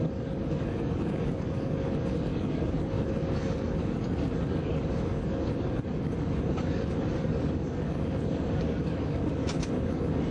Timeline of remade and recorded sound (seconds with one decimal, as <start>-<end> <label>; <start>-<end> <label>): 0.0-10.3 remade

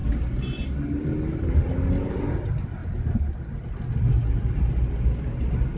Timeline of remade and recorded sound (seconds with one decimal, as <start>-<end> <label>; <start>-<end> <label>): 0.0-5.8 recorded

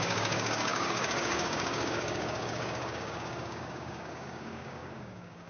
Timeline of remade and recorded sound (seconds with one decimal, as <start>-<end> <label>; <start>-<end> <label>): 0.0-5.5 remade

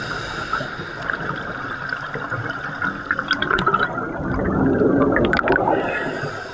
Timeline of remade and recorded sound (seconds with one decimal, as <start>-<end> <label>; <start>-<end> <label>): 0.0-6.5 recorded

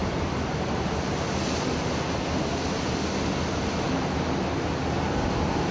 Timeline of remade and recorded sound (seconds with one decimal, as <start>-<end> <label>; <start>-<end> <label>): 0.0-5.7 recorded

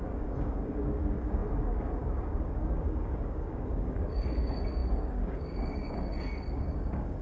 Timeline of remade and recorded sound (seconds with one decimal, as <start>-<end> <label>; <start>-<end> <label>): 0.0-7.2 remade

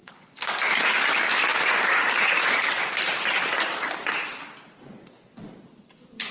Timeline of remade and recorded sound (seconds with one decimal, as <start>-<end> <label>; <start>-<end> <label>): 0.0-2.8 remade; 2.8-5.8 recorded; 5.8-6.3 remade

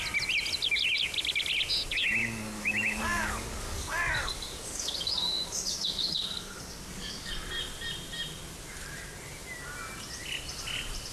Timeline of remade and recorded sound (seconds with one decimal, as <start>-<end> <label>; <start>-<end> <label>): 0.0-2.2 recorded; 2.2-7.3 remade; 7.3-11.1 recorded